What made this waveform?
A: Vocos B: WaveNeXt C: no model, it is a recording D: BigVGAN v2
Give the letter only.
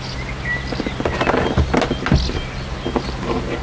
C